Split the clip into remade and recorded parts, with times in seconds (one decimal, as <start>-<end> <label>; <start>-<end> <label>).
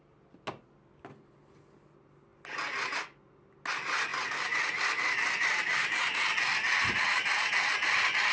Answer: 0.0-8.3 recorded